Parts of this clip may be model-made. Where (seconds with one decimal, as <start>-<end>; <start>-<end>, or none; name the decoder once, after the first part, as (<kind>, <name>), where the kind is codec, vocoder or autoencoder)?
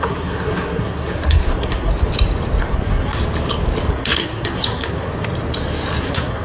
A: 0.0-1.9 (codec, SNAC); 2.6-3.2; 3.9-5.1; 6.0-6.4